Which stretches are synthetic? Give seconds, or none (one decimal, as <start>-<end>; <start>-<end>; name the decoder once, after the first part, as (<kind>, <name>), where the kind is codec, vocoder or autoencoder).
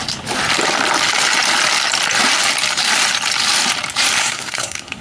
4.2-5.0 (codec, SNAC)